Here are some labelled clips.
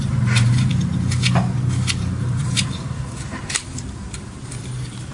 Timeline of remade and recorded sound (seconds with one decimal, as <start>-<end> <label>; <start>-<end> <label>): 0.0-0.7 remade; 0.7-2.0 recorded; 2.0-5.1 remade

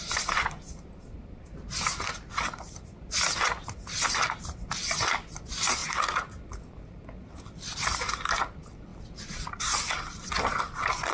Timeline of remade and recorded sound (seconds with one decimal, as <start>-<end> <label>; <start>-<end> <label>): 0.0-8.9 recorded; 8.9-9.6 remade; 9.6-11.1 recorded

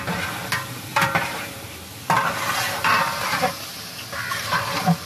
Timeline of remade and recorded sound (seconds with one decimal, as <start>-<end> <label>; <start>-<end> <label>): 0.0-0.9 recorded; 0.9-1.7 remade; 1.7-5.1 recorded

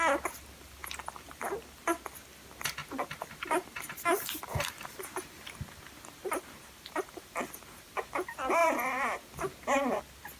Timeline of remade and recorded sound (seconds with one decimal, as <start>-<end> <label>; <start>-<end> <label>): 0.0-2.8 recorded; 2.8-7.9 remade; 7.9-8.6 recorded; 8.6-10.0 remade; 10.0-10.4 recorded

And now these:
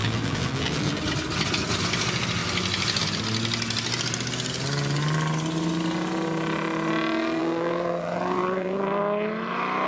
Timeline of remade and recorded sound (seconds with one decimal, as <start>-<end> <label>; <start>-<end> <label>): 0.0-1.0 remade; 1.0-7.4 recorded; 7.4-9.0 remade; 9.0-9.9 recorded

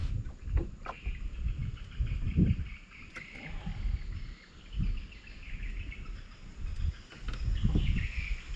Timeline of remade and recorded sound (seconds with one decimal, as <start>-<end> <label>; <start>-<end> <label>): 0.0-3.7 remade; 3.7-5.7 recorded; 5.7-6.7 remade; 6.7-8.6 recorded